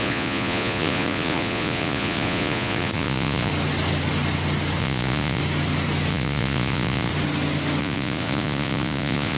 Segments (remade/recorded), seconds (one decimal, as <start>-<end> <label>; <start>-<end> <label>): 0.0-3.5 remade; 3.5-4.8 recorded; 4.8-5.4 remade; 5.4-6.1 recorded; 6.1-7.1 remade; 7.1-7.8 recorded; 7.8-9.4 remade